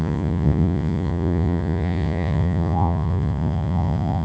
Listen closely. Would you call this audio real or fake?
fake